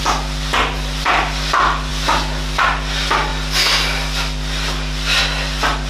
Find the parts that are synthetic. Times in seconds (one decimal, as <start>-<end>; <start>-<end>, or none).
none